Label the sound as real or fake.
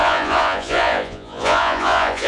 fake